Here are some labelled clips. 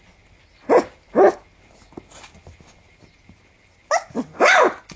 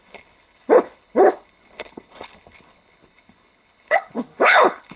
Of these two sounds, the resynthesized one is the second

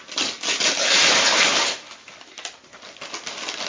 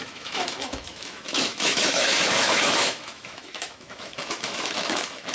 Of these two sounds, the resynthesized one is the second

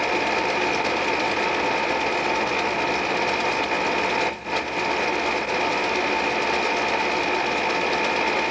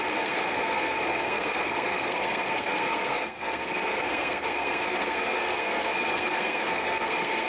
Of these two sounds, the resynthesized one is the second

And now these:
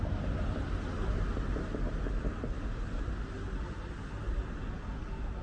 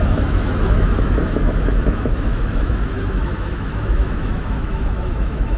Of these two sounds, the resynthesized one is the second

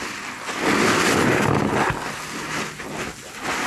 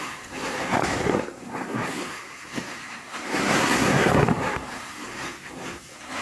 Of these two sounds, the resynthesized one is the second